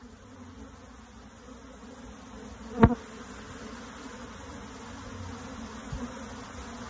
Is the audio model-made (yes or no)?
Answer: no